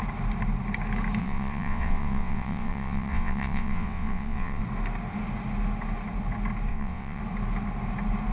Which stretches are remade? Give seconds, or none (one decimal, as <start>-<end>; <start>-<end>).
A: 1.2-4.6; 6.7-7.2